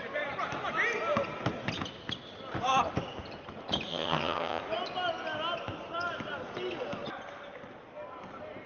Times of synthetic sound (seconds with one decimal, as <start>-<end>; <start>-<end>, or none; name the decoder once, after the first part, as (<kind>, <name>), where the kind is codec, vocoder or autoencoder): 3.9-4.6 (vocoder, HiFi-GAN)